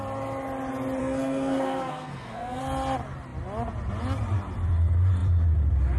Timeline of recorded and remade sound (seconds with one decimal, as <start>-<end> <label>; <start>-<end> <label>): 0.0-1.0 recorded; 1.0-2.6 remade; 2.6-6.0 recorded